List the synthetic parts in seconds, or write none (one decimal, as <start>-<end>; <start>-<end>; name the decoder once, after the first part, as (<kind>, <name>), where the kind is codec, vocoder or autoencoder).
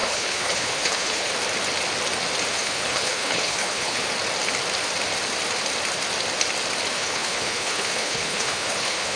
0.0-1.3 (codec, HILCodec); 2.5-4.0; 6.9-9.2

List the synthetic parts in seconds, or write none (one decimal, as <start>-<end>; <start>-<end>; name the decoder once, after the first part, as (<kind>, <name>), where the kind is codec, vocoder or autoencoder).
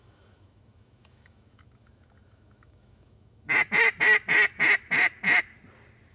0.0-3.5 (autoencoder, DAC-VAE)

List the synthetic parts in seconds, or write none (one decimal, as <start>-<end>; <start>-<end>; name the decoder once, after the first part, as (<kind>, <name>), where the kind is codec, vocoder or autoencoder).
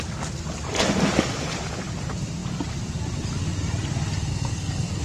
4.3-5.0 (codec, SNAC)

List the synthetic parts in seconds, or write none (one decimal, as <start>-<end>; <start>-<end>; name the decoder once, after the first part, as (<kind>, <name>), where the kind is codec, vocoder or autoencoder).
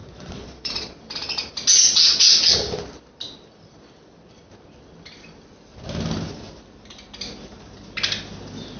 0.0-0.9 (vocoder, Vocos)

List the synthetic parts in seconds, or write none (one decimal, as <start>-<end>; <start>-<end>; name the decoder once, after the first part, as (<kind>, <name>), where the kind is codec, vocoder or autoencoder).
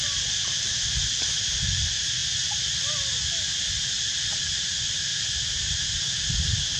0.0-2.2 (vocoder, BigVGAN v2); 4.0-5.1; 6.0-6.8